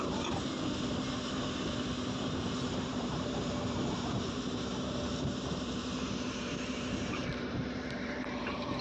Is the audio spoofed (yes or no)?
yes